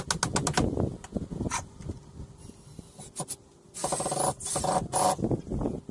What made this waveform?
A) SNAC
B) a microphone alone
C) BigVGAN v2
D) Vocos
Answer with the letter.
B